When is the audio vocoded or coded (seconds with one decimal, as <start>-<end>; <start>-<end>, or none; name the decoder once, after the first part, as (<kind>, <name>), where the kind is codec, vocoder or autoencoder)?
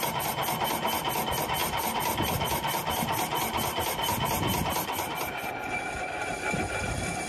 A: 1.6-5.5 (vocoder, BigVGAN v2)